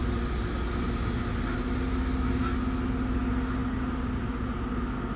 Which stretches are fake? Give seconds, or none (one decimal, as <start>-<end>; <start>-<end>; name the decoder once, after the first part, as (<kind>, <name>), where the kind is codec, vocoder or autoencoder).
none